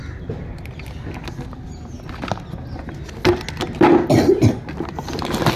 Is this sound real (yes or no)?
yes